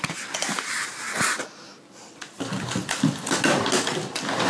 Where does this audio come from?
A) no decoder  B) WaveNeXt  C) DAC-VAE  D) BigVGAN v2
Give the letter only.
A